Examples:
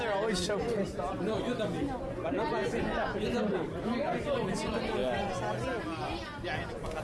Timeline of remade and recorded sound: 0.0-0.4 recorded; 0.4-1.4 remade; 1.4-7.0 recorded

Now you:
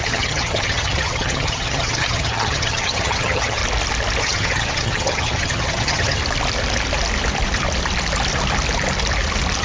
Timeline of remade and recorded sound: 0.0-3.6 remade; 3.6-4.2 recorded; 4.2-6.2 remade; 6.2-9.6 recorded

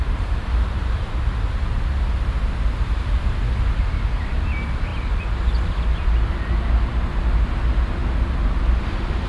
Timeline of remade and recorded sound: 0.0-0.4 recorded; 0.4-1.1 remade; 1.1-4.9 recorded; 4.9-5.5 remade; 5.5-9.3 recorded

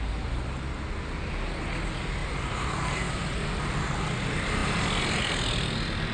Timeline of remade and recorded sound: 0.0-6.1 recorded

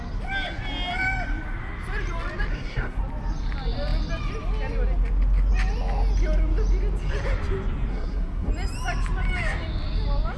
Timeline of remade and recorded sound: 0.0-2.5 recorded; 2.5-3.0 remade; 3.0-7.9 recorded; 7.9-8.5 remade; 8.5-10.4 recorded

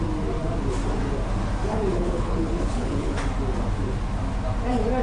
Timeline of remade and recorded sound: 0.0-1.7 recorded; 1.7-3.2 remade; 3.2-5.0 recorded